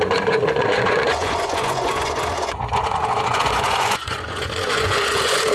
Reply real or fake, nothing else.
fake